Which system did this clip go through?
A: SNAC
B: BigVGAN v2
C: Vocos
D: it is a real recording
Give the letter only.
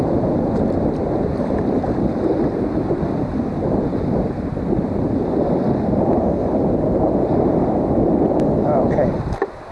B